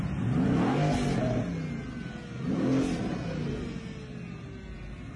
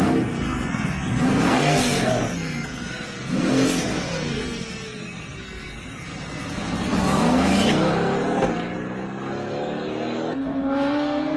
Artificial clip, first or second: second